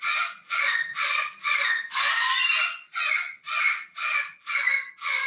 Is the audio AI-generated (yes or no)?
yes